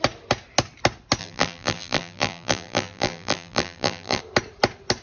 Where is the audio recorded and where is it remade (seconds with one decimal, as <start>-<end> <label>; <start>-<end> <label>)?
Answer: 0.0-1.2 recorded; 1.2-4.2 remade; 4.2-5.0 recorded